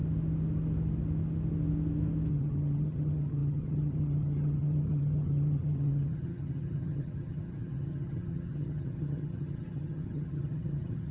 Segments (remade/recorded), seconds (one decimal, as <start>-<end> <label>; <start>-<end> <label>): 0.0-2.3 recorded; 2.3-11.1 remade